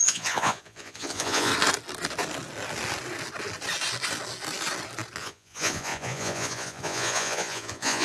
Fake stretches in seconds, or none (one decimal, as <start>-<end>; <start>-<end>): 0.0-1.5; 5.2-8.0